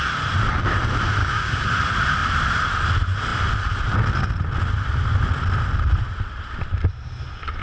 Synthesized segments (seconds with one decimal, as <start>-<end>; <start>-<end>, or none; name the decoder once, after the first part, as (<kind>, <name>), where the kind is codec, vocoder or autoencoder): 1.2-1.7 (codec, DAC)